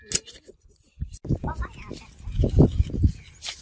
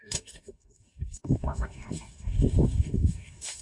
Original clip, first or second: first